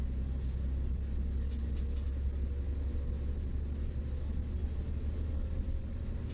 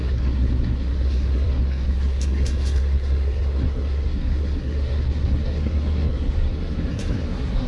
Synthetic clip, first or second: second